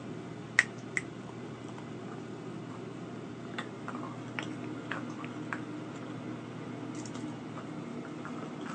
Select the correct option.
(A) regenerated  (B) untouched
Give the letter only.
B